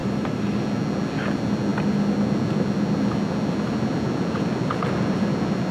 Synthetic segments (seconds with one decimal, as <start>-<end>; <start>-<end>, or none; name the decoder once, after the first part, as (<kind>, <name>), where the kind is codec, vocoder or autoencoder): 0.0-0.6 (vocoder, BigVGAN v2)